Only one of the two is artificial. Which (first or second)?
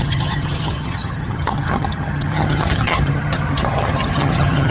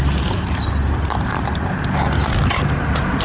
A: first